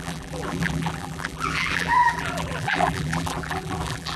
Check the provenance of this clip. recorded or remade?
remade